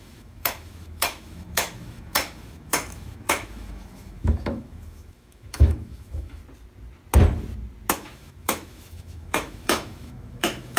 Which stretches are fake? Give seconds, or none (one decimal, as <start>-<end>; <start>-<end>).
0.0-6.4; 7.9-10.8